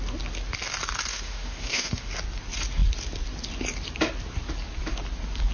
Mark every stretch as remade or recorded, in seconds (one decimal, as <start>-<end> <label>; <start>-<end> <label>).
0.0-1.1 recorded; 1.1-2.1 remade; 2.1-5.5 recorded